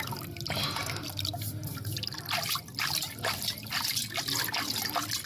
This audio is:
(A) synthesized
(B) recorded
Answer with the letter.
B